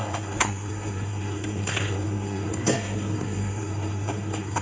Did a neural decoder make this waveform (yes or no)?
yes